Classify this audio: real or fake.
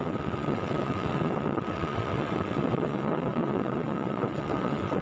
fake